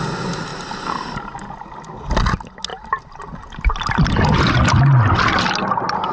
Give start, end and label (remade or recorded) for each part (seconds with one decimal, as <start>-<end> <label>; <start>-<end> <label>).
0.0-6.1 recorded